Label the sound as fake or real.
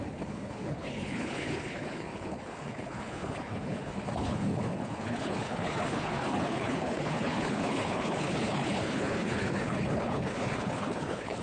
fake